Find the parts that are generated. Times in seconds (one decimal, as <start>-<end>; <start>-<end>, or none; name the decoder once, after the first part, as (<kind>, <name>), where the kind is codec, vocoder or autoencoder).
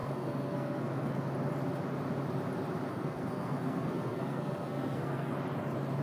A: 0.0-1.3 (codec, SNAC); 2.9-5.3